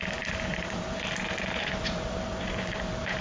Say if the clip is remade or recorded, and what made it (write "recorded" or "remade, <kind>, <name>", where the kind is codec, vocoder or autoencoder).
remade, vocoder, BigVGAN v2